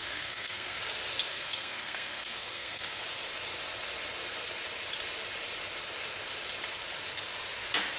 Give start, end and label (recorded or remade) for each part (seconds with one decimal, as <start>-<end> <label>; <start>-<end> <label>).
0.0-0.8 remade; 0.8-1.3 recorded; 1.3-3.0 remade; 3.0-8.0 recorded